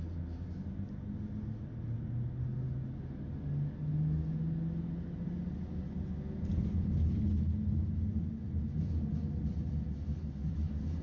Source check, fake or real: real